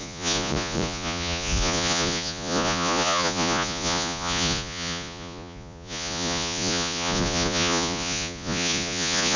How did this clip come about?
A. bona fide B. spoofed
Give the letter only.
B